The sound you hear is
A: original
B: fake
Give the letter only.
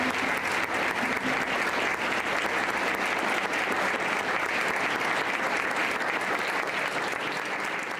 A